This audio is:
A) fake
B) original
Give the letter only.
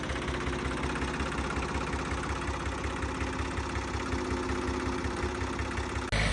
B